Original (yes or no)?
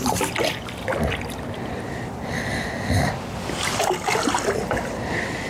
yes